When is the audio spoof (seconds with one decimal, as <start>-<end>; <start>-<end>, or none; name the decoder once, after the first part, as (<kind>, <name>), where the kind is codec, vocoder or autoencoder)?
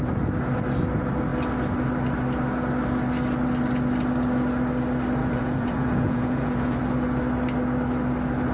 5.2-6.8 (vocoder, Vocos)